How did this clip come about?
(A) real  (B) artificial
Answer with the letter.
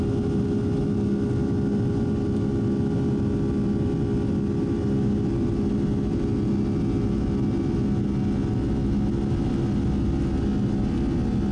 A